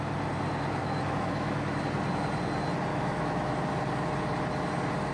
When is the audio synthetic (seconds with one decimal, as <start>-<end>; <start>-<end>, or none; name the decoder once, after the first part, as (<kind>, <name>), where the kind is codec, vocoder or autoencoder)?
0.8-1.8 (autoencoder, DAC-VAE); 2.9-3.5

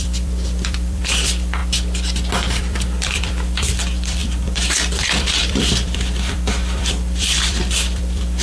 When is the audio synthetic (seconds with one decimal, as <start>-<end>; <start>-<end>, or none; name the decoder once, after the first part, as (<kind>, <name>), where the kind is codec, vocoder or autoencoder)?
0.0-1.6 (vocoder, BigVGAN v2); 2.6-8.4

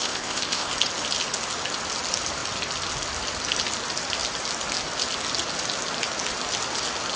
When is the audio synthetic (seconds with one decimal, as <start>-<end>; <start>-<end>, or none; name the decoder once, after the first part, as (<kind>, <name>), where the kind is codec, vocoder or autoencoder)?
0.0-0.7 (codec, ZipCodec)

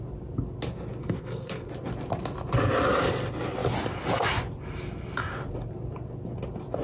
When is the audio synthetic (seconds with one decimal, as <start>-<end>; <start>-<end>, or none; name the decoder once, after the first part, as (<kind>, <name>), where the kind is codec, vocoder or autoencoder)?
1.0-1.7 (codec, SNAC)